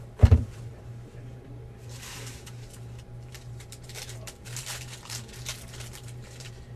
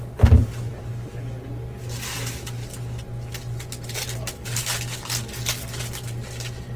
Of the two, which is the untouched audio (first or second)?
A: second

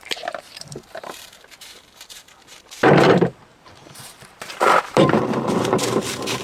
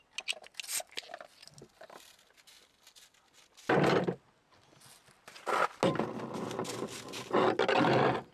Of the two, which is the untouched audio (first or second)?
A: second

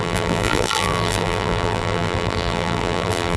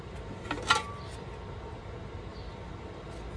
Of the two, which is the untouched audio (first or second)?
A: second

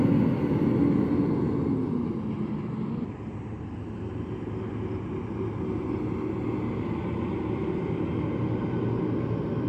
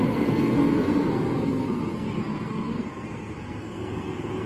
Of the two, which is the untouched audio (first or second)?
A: first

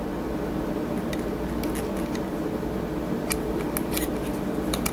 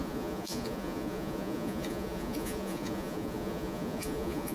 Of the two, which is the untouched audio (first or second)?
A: first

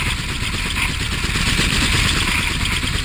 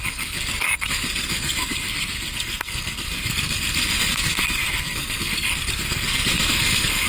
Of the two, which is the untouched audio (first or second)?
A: first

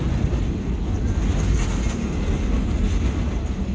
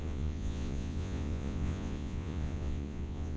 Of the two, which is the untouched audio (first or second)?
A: first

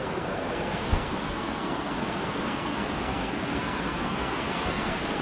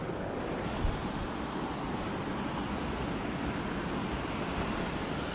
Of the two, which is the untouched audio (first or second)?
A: second